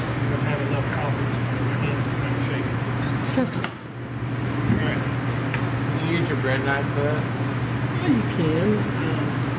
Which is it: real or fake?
real